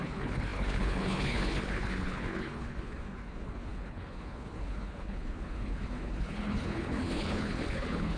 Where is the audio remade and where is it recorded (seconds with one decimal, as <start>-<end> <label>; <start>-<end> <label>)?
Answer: 0.0-8.2 remade